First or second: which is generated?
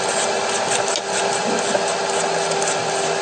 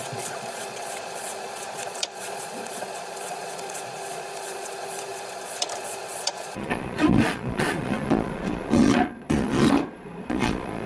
second